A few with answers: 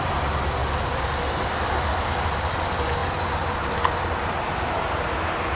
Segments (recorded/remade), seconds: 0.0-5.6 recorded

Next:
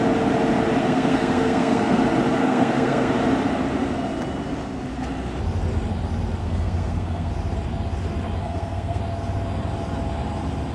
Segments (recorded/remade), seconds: 0.0-0.8 recorded; 0.8-2.0 remade; 2.0-2.4 recorded; 2.4-3.1 remade; 3.1-6.4 recorded; 6.4-7.3 remade; 7.3-8.4 recorded; 8.4-9.0 remade; 9.0-10.7 recorded

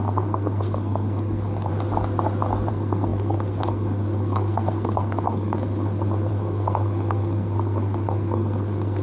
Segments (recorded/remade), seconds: 0.0-1.7 remade; 1.7-2.7 recorded; 2.7-9.0 remade

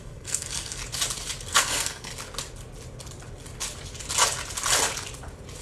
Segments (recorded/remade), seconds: 0.0-0.8 remade; 0.8-1.4 recorded; 1.4-2.1 remade; 2.1-5.6 recorded

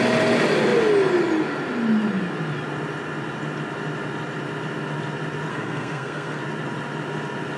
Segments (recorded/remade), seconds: 0.0-5.5 recorded; 5.5-6.4 remade; 6.4-7.6 recorded

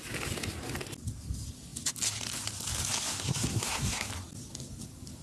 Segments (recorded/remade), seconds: 0.0-3.1 recorded; 3.1-4.1 remade; 4.1-5.2 recorded

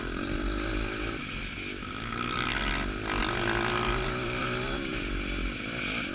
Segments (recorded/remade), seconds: 0.0-6.1 recorded

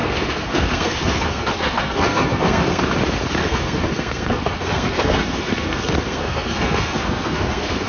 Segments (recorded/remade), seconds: 0.0-2.9 remade; 2.9-3.4 recorded; 3.4-7.9 remade